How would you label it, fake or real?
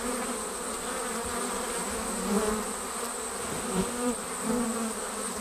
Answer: real